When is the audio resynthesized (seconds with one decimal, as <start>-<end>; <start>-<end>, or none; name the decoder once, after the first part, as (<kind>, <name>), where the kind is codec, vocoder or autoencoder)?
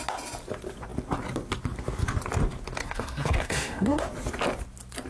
2.8-4.0 (codec, SNAC)